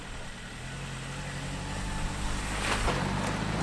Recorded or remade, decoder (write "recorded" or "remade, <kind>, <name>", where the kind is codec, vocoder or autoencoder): recorded